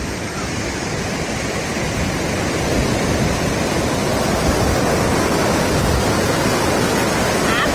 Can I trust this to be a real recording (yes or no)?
yes